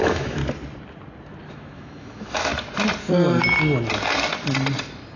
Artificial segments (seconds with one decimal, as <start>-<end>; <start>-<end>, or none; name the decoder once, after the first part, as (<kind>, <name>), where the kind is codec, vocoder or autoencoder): 0.0-0.4 (autoencoder, DAC-VAE); 1.5-2.5